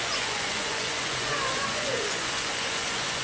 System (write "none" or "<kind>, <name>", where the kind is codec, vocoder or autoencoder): vocoder, Vocos